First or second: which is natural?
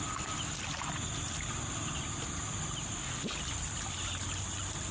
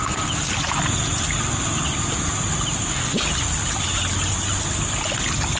second